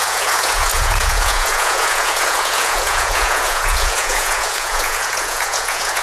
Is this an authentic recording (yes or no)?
no